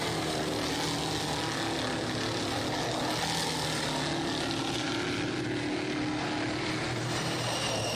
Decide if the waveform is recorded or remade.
recorded